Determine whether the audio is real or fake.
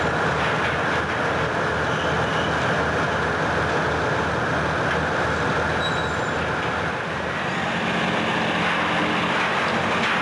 real